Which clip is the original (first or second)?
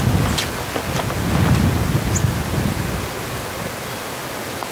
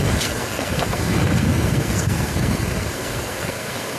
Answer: first